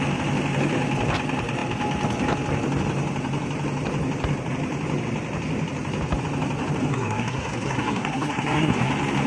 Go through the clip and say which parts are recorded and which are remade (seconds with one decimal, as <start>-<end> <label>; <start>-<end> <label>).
0.0-6.9 recorded; 6.9-8.9 remade; 8.9-9.3 recorded